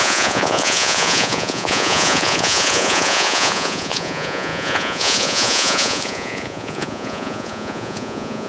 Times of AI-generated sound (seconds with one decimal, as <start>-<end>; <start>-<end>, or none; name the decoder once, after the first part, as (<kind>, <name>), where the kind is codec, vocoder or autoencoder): 0.0-8.5 (vocoder, Vocos)